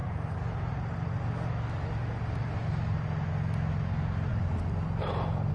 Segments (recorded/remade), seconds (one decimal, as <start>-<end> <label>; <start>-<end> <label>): 0.0-0.7 remade; 0.7-2.0 recorded; 2.0-2.7 remade; 2.7-4.3 recorded; 4.3-5.5 remade